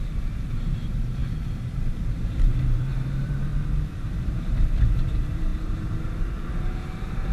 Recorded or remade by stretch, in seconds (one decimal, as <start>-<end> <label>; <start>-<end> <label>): 0.0-3.5 remade; 3.5-4.2 recorded; 4.2-7.3 remade